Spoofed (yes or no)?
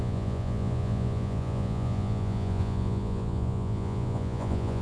yes